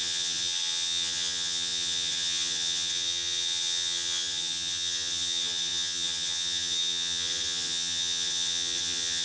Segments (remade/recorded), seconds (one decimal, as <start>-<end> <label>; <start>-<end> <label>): 0.0-9.2 remade